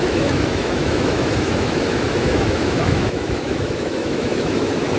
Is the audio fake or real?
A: fake